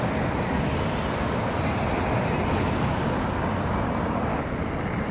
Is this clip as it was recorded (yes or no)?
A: yes